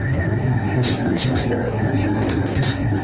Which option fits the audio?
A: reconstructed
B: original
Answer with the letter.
A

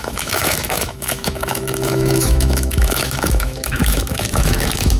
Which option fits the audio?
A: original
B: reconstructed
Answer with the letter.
B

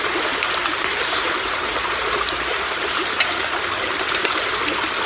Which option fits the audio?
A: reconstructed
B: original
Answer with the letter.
A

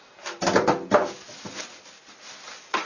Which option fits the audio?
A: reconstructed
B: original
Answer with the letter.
B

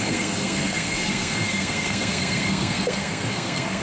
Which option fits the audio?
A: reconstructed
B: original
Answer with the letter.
A